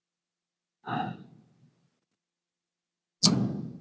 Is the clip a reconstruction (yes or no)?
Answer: no